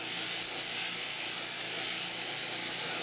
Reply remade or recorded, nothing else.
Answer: recorded